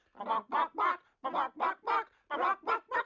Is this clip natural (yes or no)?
yes